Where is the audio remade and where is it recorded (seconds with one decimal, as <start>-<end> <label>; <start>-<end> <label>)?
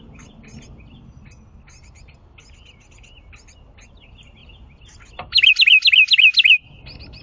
0.0-7.2 recorded